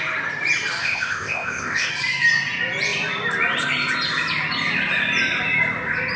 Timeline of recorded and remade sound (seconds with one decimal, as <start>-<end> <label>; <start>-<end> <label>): 0.0-0.8 recorded; 0.8-1.9 remade; 1.9-6.2 recorded